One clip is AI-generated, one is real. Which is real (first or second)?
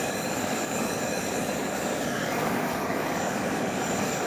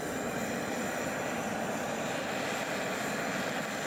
second